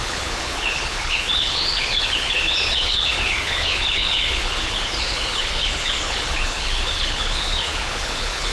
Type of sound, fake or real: fake